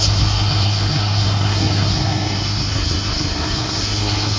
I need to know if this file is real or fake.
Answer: fake